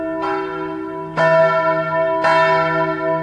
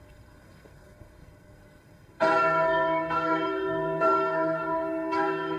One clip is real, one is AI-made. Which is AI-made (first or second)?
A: second